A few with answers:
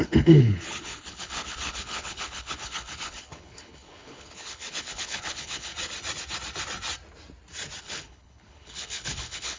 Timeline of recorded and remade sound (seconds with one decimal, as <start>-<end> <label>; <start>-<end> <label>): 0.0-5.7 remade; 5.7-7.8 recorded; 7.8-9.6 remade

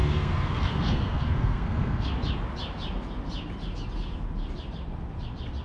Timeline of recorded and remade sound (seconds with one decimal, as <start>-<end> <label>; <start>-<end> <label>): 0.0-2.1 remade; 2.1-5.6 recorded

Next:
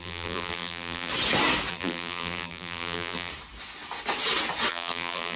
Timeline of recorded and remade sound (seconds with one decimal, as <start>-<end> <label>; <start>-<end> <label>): 0.0-1.1 remade; 1.1-1.7 recorded; 1.7-3.3 remade; 3.3-4.7 recorded; 4.7-5.4 remade